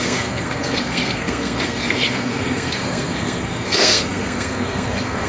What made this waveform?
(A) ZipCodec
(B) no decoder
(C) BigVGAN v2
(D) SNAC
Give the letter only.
D